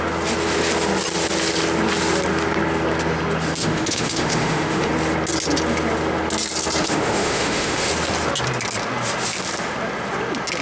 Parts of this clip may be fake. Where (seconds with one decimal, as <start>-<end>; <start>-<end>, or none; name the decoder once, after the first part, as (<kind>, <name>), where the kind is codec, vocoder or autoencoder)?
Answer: 3.6-4.9 (autoencoder, DAC-VAE); 6.8-7.9